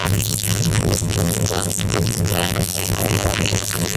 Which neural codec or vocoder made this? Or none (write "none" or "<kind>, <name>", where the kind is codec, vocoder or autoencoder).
vocoder, BigVGAN v2